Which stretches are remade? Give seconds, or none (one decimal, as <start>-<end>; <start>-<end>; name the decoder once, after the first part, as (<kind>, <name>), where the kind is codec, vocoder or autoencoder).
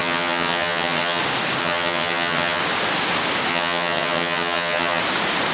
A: 0.0-1.2 (vocoder, HiFi-GAN); 1.6-2.6; 3.5-5.0